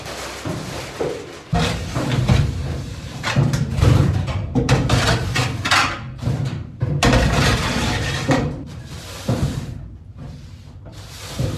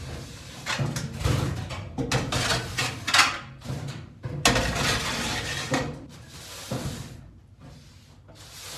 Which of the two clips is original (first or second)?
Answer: second